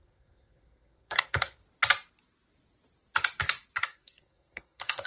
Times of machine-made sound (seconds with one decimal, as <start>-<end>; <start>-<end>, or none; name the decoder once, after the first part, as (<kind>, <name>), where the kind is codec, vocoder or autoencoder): 0.0-1.6 (codec, SNAC); 3.8-5.1